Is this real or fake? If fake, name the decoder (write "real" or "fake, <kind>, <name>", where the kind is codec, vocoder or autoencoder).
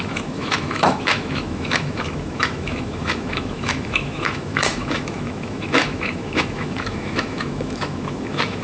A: fake, autoencoder, DAC-VAE